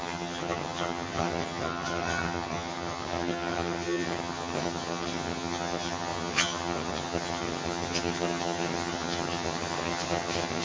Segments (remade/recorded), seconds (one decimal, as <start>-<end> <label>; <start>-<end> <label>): 0.0-10.6 remade